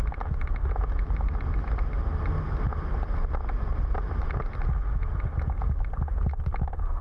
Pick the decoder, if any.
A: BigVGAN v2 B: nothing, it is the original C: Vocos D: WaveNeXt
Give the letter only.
B